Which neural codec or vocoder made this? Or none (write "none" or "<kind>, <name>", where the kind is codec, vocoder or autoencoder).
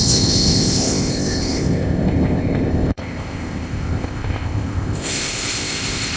codec, ZipCodec